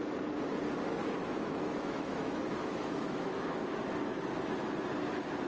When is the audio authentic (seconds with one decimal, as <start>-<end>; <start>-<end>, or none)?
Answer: 0.0-1.0; 3.8-5.5